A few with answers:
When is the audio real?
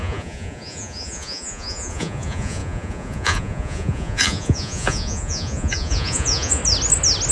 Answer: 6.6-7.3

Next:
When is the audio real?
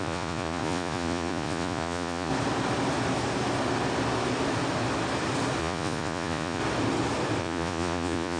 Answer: 2.3-5.6; 6.6-7.4